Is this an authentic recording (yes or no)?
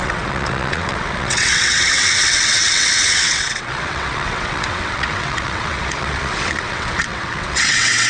no